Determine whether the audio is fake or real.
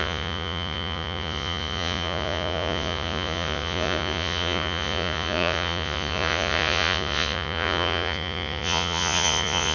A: fake